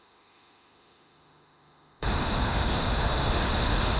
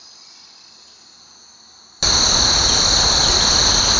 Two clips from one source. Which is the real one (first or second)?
second